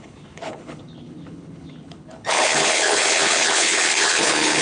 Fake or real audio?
fake